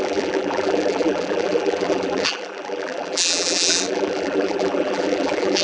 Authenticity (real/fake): fake